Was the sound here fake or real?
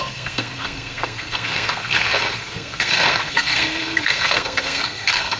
fake